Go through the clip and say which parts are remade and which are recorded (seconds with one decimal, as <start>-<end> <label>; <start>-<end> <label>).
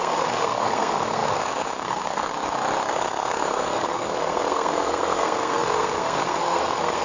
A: 0.0-2.3 remade; 2.3-2.9 recorded; 2.9-7.0 remade